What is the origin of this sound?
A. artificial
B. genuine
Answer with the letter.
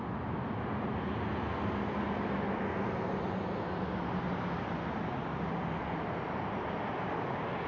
B